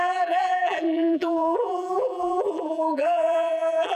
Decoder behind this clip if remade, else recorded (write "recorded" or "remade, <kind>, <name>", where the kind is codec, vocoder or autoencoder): remade, vocoder, BigVGAN v2